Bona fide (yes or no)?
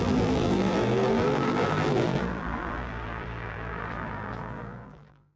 no